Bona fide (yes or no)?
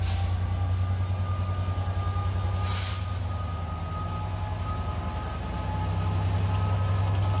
yes